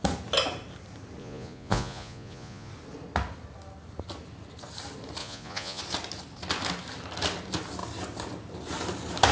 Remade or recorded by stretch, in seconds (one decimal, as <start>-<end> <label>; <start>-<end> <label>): 0.0-1.2 recorded; 1.2-2.7 remade; 2.7-5.2 recorded; 5.2-5.8 remade; 5.8-9.3 recorded